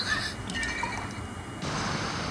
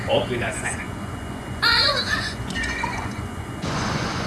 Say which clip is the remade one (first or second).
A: second